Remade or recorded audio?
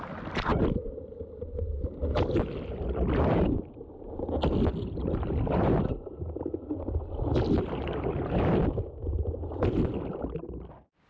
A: recorded